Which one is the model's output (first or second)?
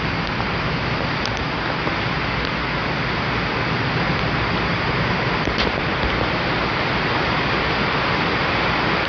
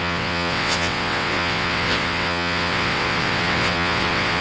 second